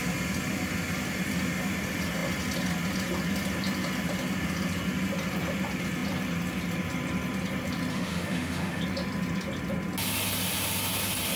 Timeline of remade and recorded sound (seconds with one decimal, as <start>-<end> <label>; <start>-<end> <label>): 0.0-7.9 recorded; 7.9-8.8 remade; 8.8-11.4 recorded